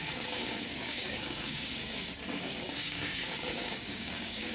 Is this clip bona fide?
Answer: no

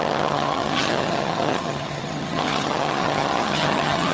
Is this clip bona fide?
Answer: no